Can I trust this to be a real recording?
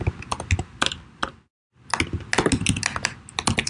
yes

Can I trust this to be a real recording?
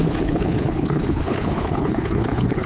no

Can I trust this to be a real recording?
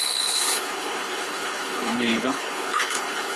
no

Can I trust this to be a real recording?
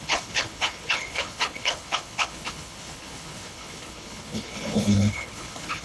no